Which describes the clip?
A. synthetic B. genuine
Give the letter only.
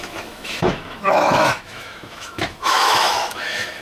A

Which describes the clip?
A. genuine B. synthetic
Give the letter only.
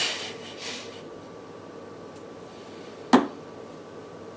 A